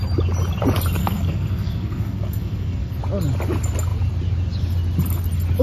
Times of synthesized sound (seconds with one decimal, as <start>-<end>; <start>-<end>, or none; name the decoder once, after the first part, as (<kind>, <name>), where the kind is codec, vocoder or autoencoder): 1.0-3.0 (codec, SNAC)